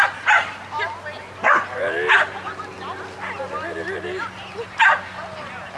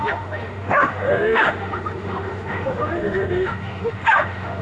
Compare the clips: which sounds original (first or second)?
first